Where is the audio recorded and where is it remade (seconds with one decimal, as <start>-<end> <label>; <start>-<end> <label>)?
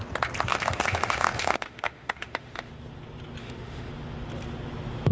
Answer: 0.0-0.5 recorded; 0.5-2.7 remade; 2.7-3.4 recorded; 3.4-3.9 remade; 3.9-5.1 recorded